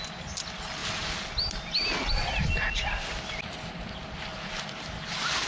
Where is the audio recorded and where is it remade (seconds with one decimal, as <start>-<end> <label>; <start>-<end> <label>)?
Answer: 0.0-5.5 recorded